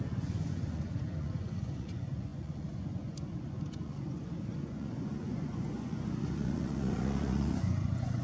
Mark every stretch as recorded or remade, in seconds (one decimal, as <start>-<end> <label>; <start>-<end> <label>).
0.0-8.2 remade